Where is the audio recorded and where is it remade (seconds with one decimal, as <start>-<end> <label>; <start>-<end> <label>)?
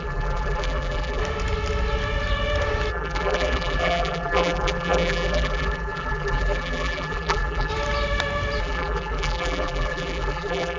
0.0-1.2 remade; 1.2-2.9 recorded; 2.9-7.7 remade; 7.7-8.6 recorded; 8.6-10.8 remade